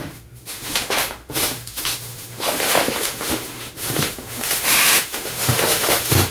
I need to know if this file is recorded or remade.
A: remade